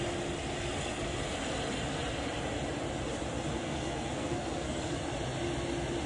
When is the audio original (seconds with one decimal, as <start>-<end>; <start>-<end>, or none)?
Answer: 0.0-3.5; 4.8-6.1